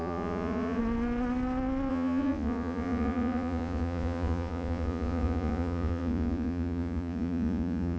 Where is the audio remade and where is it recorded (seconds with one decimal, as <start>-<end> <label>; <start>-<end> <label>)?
0.0-0.8 remade; 0.8-1.9 recorded; 1.9-8.0 remade